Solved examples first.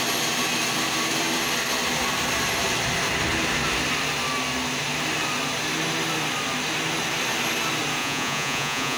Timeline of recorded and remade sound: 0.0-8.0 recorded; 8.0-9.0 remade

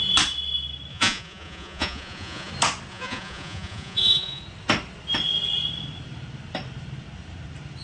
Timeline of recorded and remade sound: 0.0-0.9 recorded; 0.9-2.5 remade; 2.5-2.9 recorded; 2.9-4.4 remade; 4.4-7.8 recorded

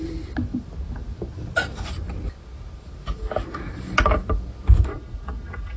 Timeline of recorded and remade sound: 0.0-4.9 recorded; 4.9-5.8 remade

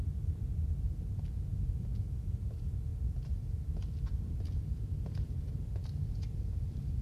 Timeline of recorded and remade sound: 0.0-7.0 recorded

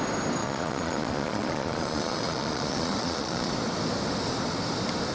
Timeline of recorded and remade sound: 0.0-0.4 recorded; 0.4-3.5 remade; 3.5-5.1 recorded

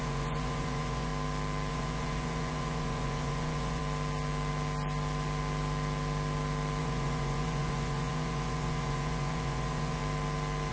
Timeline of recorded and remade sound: 0.0-1.1 remade; 1.1-1.7 recorded; 1.7-3.8 remade; 3.8-6.8 recorded; 6.8-10.0 remade; 10.0-10.7 recorded

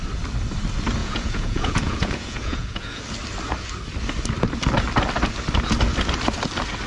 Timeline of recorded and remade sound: 0.0-1.0 recorded; 1.0-3.0 remade; 3.0-6.9 recorded